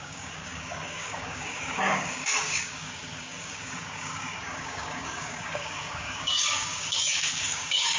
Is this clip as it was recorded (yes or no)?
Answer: no